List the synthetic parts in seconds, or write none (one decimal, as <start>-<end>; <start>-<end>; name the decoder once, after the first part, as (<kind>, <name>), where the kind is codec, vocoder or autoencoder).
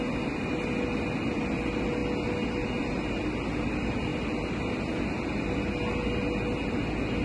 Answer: none